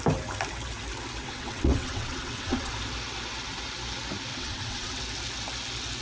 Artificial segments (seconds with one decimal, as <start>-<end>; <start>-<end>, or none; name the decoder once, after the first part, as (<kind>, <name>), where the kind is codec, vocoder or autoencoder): 1.2-2.7 (vocoder, WaveNeXt); 4.3-5.0

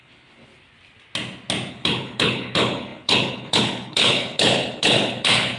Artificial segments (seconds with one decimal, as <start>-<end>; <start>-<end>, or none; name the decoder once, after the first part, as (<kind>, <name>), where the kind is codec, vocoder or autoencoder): 0.0-0.5 (codec, HILCodec); 1.7-5.6

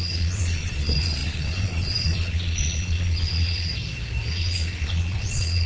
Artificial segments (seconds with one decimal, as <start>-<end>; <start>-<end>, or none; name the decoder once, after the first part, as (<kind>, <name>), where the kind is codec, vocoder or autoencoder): 0.0-3.7 (vocoder, Vocos); 4.3-5.7

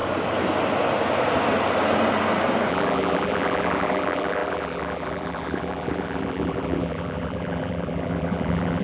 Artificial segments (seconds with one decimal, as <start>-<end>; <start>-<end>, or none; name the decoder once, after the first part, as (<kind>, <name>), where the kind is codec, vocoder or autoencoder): 2.7-8.8 (vocoder, BigVGAN v2)

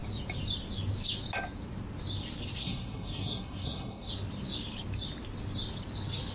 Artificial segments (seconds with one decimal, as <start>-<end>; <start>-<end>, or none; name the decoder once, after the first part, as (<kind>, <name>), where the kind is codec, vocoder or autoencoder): 2.6-4.1 (codec, SNAC)

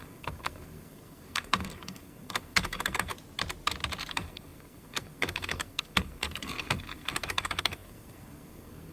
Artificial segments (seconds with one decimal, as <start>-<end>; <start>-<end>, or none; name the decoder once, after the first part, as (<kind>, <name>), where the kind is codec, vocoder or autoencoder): 0.0-3.1 (codec, SNAC); 4.1-8.9

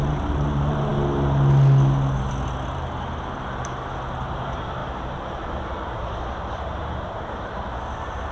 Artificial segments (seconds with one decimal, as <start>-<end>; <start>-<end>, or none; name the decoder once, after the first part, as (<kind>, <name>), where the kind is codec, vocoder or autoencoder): 0.0-0.9 (vocoder, BigVGAN v2); 4.2-8.3

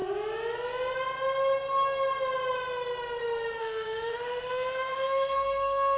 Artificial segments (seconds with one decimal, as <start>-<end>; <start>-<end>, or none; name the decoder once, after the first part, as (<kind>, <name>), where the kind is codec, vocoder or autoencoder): 3.6-6.0 (autoencoder, DAC-VAE)